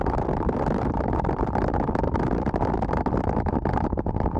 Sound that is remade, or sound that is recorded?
recorded